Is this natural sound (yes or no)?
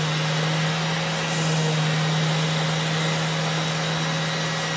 yes